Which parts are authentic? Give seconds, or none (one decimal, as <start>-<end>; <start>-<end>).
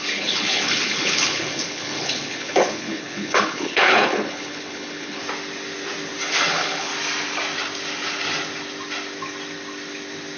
5.2-6.5; 6.9-10.4